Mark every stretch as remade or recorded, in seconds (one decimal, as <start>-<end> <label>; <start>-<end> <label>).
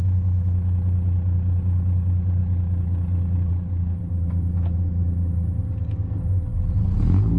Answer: 0.0-7.4 recorded